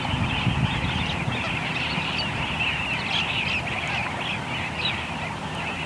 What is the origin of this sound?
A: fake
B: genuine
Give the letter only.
B